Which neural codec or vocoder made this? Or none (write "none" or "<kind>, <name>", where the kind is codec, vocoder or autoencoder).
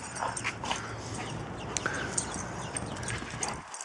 none